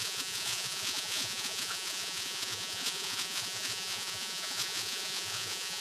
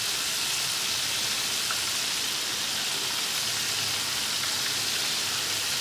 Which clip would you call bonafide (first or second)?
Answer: second